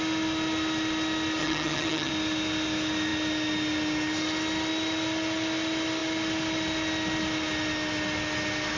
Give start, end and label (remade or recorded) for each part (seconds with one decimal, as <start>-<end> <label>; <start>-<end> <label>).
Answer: 0.0-1.4 recorded; 1.4-2.1 remade; 2.1-8.8 recorded